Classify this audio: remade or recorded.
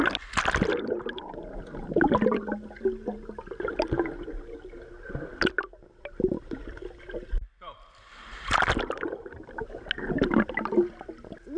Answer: recorded